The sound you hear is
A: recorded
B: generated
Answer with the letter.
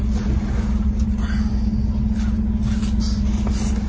A